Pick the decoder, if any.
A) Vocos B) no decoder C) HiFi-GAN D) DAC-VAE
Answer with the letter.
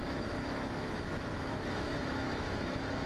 D